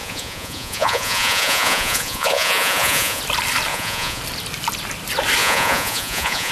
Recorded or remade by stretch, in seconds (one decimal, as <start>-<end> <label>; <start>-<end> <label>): 0.0-3.2 remade; 3.2-3.7 recorded; 3.7-4.2 remade; 4.2-5.4 recorded; 5.4-6.5 remade